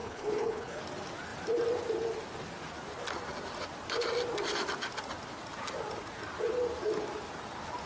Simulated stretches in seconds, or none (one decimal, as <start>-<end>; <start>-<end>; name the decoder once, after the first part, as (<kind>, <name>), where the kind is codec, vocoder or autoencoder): 0.0-0.8 (codec, HILCodec)